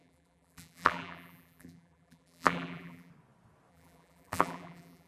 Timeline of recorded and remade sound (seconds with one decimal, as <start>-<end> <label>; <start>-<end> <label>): 0.0-3.1 remade; 3.1-3.7 recorded; 3.7-5.1 remade

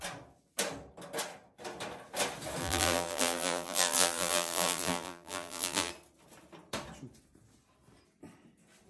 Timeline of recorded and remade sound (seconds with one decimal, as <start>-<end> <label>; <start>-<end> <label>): 0.0-2.6 recorded; 2.6-5.9 remade; 5.9-8.9 recorded

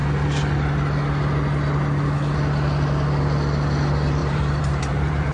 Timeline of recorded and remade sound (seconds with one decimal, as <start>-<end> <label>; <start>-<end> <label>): 0.0-4.2 recorded; 4.2-5.3 remade

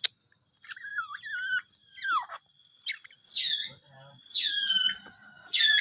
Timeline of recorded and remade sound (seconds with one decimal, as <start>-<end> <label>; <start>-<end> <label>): 0.0-5.8 recorded

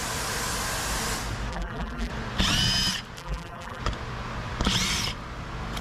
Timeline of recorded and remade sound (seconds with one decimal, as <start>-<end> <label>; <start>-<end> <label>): 0.0-1.5 recorded; 1.5-2.1 remade; 2.1-3.2 recorded; 3.2-3.8 remade; 3.8-5.8 recorded

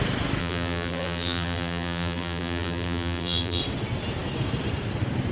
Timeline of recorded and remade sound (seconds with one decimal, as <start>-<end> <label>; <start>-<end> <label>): 0.0-0.4 recorded; 0.4-3.6 remade; 3.6-5.3 recorded

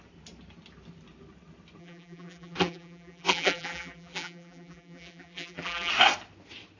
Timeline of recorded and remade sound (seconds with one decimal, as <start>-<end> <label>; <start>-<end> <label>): 0.0-1.8 recorded; 1.8-5.9 remade; 5.9-6.8 recorded

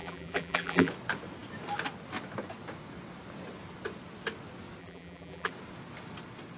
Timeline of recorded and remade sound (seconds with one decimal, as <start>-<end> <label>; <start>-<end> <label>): 0.0-0.9 remade; 0.9-4.8 recorded; 4.8-5.5 remade; 5.5-6.6 recorded